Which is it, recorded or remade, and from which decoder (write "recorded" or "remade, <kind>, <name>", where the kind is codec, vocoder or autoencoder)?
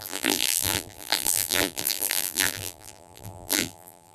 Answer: remade, vocoder, BigVGAN v2